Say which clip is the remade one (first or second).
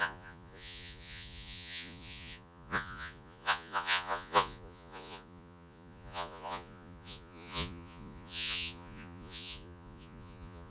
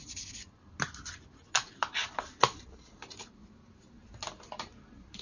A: first